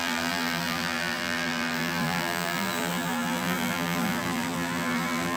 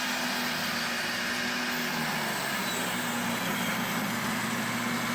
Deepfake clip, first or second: first